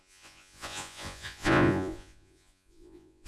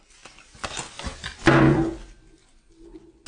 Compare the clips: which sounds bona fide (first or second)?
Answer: second